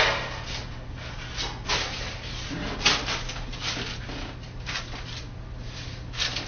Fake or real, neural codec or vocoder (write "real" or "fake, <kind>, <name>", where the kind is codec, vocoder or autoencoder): real